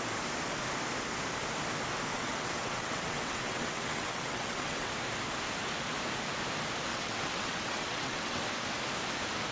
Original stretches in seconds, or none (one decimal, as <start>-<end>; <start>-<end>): 0.0-2.1; 4.9-6.9; 8.4-9.5